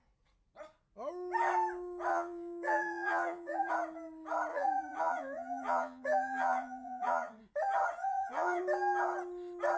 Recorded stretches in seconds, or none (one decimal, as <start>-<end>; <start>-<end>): 0.0-2.1; 3.7-4.5; 7.4-8.0; 8.6-9.8